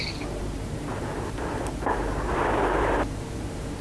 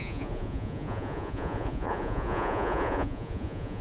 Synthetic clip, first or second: second